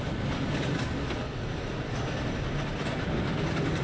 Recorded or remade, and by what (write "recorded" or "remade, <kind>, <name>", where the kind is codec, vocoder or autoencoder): recorded